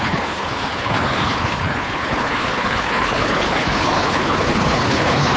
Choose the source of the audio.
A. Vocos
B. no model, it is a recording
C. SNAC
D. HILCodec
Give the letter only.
D